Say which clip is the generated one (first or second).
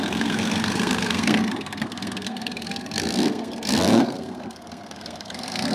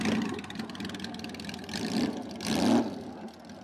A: first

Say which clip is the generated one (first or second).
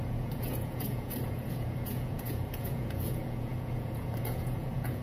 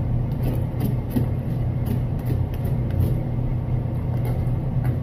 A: first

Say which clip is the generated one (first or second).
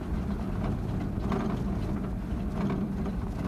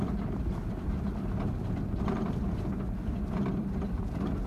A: second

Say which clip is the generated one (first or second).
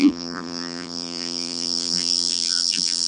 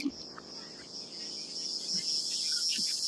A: first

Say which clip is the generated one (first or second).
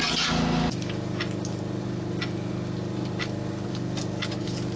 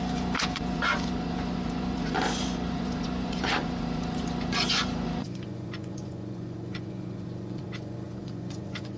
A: second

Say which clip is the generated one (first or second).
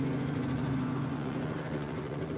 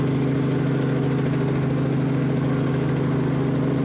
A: first